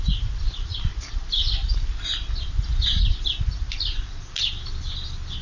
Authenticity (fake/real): real